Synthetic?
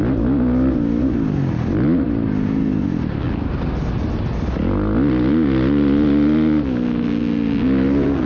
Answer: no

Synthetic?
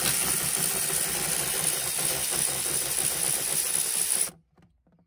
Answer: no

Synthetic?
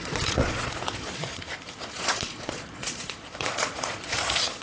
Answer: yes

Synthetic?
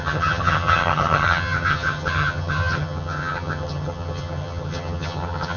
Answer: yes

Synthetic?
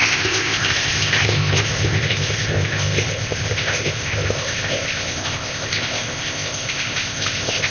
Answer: yes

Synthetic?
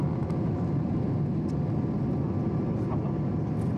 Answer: no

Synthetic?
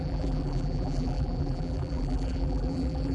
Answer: yes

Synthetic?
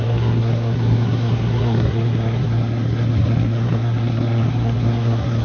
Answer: yes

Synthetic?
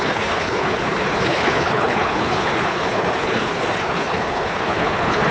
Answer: yes